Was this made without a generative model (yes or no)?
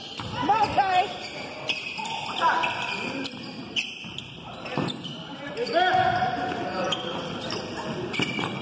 no